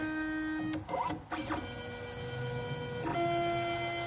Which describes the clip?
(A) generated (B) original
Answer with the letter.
B